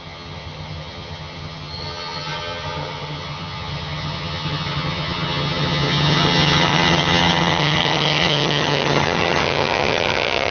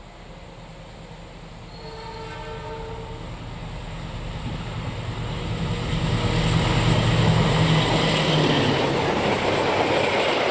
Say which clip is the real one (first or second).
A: second